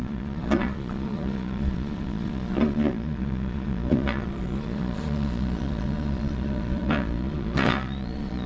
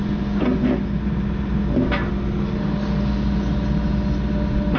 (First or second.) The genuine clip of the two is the second